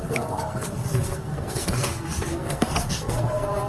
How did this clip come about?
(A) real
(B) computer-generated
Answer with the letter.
B